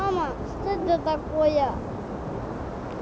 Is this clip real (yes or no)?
yes